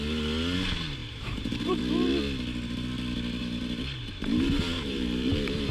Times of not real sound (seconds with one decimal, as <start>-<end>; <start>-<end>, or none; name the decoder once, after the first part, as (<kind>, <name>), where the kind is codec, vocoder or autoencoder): 1.0-1.8 (vocoder, BigVGAN v2); 3.4-5.7